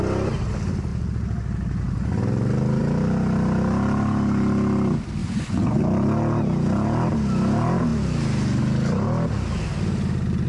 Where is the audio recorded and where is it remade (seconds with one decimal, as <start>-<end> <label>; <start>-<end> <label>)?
0.0-5.2 recorded; 5.2-5.8 remade; 5.8-10.5 recorded

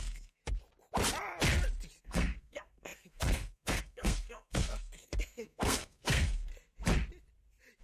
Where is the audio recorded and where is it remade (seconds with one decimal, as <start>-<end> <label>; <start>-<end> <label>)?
0.0-0.4 remade; 0.4-2.0 recorded; 2.0-6.5 remade; 6.5-7.8 recorded

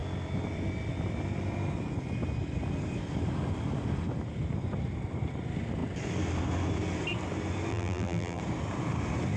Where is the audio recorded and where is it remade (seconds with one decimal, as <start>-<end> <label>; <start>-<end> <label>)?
0.0-7.7 recorded; 7.7-8.4 remade; 8.4-9.4 recorded

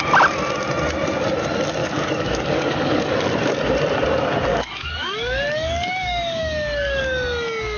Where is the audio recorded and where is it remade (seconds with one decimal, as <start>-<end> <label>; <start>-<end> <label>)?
0.0-1.8 recorded; 1.8-3.1 remade; 3.1-4.5 recorded; 4.5-7.0 remade; 7.0-7.8 recorded

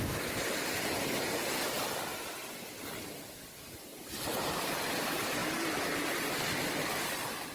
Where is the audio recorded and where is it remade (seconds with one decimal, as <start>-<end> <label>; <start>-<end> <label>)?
0.0-7.5 recorded

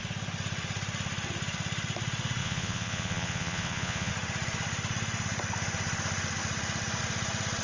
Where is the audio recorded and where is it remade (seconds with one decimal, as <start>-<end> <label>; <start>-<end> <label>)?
0.0-2.4 recorded; 2.4-4.1 remade; 4.1-7.6 recorded